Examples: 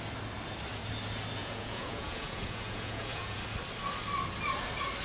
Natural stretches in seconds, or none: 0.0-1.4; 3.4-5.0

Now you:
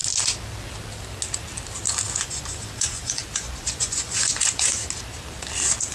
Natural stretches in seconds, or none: 0.0-2.1; 4.8-5.9

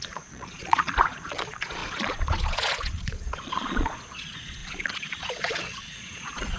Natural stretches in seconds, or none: none

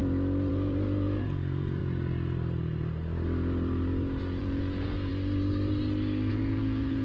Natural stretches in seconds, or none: 0.0-0.5; 1.8-4.4; 5.1-6.3